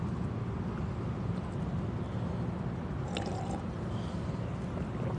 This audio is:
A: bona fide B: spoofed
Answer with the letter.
A